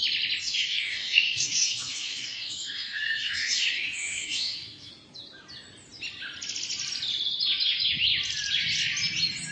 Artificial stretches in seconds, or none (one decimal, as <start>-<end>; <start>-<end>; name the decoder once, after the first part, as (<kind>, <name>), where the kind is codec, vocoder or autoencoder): 0.4-4.9 (codec, DAC)